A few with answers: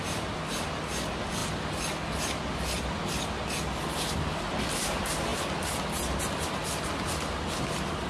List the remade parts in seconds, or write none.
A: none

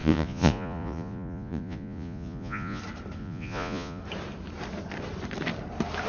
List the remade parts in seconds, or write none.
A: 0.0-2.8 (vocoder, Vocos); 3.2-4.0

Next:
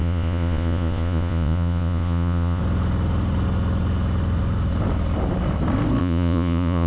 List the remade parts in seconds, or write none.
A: 0.0-2.6 (vocoder, Vocos); 6.0-6.9

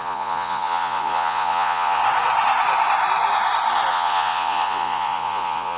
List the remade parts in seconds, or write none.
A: 0.0-2.0 (vocoder, Vocos); 3.9-5.8

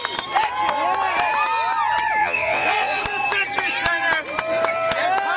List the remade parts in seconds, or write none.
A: 2.2-3.0 (vocoder, Vocos)